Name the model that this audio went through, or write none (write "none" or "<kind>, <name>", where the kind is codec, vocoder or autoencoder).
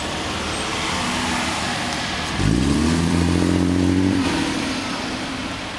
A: vocoder, BigVGAN v2